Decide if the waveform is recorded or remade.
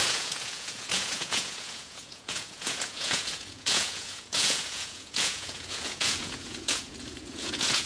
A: remade